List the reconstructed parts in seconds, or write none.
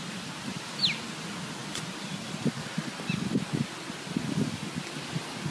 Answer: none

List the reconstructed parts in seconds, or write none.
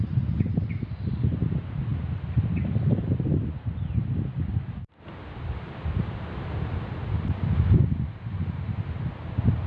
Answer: 8.3-9.0